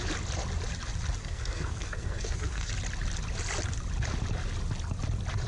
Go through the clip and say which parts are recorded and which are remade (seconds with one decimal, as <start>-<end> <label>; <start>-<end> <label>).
0.0-1.2 recorded; 1.2-2.7 remade; 2.7-5.5 recorded